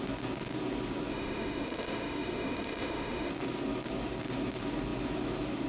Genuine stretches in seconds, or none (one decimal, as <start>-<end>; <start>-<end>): 0.0-1.1; 3.3-5.7